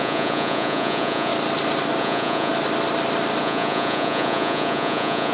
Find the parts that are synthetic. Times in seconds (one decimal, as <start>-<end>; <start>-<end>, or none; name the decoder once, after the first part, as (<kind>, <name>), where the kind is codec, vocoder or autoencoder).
0.0-1.3 (vocoder, Vocos); 2.0-2.5; 3.4-5.3